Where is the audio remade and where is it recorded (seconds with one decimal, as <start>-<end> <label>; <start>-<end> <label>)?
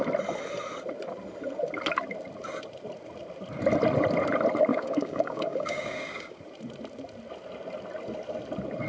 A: 0.0-4.7 recorded; 4.7-6.4 remade; 6.4-8.9 recorded